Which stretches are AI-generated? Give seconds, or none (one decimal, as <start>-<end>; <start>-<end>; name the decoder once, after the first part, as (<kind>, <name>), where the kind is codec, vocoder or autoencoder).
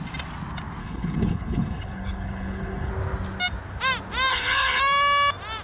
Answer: 0.8-2.9 (codec, HILCodec); 4.3-4.8